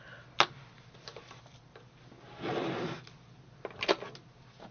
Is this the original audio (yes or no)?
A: yes